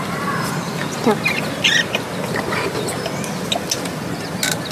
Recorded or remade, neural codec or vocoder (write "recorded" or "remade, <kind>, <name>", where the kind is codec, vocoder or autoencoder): recorded